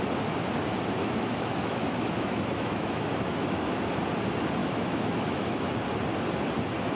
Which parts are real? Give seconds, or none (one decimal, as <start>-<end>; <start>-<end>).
0.0-1.0; 3.9-4.6; 5.7-6.9